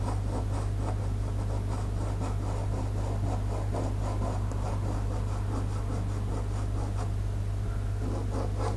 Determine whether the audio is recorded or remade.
recorded